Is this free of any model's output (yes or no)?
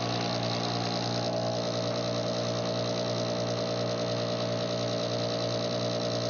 yes